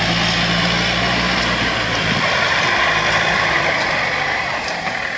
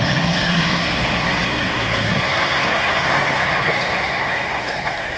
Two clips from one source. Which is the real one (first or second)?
first